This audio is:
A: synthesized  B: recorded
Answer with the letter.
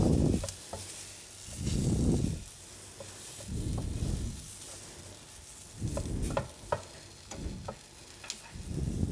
B